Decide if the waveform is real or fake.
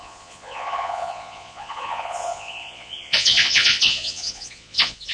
fake